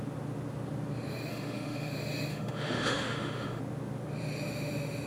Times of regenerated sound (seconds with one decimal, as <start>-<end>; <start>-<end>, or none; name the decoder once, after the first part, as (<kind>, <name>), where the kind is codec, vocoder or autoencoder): 1.3-1.9 (autoencoder, DAC-VAE); 2.3-3.6